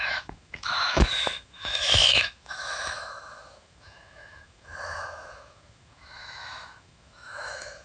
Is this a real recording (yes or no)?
no